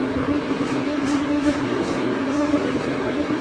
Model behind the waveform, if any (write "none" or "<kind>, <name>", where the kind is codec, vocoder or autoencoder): codec, SNAC